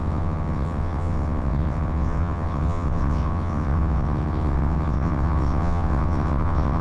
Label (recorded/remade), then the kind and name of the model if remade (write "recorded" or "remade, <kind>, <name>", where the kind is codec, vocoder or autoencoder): remade, vocoder, WaveNeXt